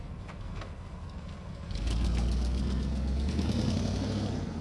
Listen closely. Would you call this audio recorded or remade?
remade